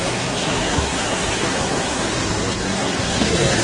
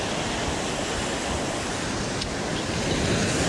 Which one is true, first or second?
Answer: second